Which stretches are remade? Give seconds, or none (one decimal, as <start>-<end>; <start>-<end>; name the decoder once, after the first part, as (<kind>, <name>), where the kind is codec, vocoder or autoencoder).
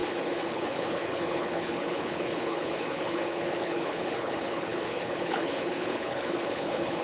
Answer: 0.0-7.0 (codec, HILCodec)